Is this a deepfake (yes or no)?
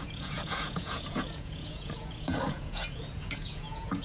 yes